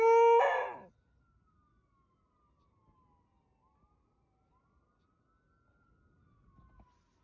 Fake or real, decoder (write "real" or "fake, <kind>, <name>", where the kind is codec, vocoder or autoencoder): real